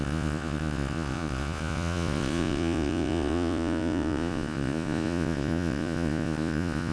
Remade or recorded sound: remade